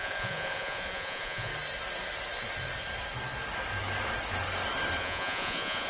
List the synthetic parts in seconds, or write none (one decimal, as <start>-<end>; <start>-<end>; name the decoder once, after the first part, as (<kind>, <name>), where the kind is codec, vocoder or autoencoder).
0.0-1.5 (vocoder, Vocos); 5.0-5.9

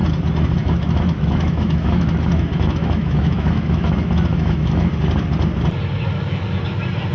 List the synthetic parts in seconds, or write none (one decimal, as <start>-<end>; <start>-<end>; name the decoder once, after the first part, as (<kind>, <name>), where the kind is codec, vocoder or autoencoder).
0.6-4.9 (autoencoder, DAC-VAE)

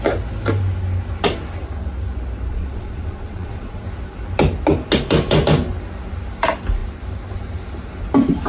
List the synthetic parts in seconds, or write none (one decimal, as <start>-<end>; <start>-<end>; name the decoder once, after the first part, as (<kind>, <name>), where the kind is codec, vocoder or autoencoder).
2.5-3.8 (vocoder, Vocos)

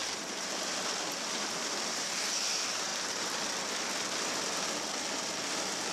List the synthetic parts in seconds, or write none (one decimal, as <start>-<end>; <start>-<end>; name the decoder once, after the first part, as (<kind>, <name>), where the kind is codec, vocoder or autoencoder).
0.0-0.6 (vocoder, BigVGAN v2)

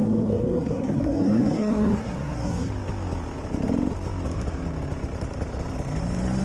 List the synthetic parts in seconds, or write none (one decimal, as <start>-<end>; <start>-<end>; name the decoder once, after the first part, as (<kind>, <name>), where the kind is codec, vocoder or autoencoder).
0.0-2.7 (codec, SNAC)

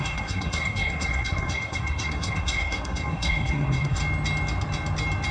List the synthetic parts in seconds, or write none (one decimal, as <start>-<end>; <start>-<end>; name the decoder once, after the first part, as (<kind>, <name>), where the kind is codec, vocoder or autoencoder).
0.0-4.0 (codec, SNAC)

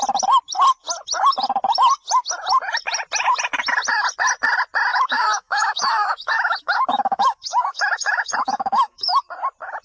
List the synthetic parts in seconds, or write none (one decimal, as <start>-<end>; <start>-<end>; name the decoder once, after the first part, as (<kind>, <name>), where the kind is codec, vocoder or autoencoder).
4.9-9.3 (autoencoder, DAC-VAE)